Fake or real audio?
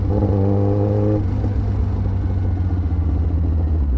real